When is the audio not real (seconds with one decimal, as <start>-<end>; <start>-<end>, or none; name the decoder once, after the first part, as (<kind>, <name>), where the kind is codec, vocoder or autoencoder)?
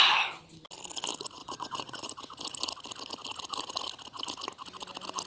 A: 1.4-2.1 (vocoder, Vocos)